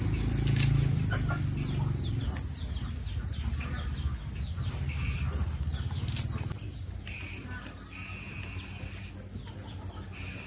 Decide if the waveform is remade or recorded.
recorded